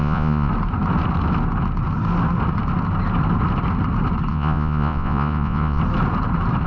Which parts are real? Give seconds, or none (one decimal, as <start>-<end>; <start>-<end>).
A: 0.5-4.3; 5.8-6.7

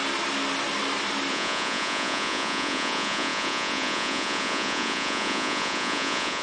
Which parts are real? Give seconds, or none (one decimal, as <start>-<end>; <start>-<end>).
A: 0.0-1.3

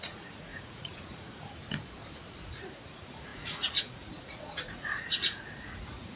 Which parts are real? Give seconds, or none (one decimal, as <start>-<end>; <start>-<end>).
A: 1.6-2.4

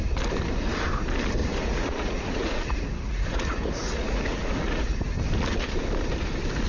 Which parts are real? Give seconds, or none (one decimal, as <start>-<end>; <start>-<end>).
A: 0.0-1.4; 5.0-6.7

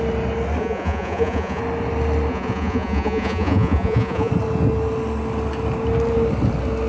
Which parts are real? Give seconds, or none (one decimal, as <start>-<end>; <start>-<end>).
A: 0.0-0.6; 1.6-2.3; 4.3-6.9

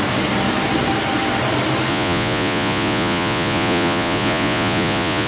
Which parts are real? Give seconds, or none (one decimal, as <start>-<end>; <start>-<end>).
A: 0.0-1.9